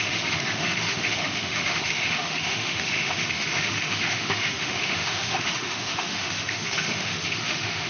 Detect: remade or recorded remade